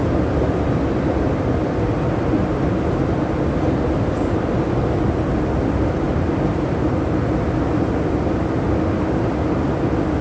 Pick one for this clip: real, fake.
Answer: real